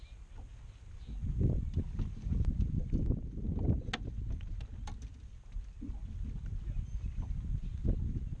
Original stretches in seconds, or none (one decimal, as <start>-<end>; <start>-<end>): 0.0-8.4